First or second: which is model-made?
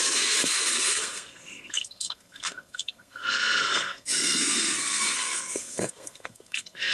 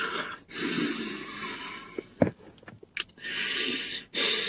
first